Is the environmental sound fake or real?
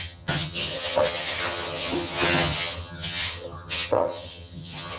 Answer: fake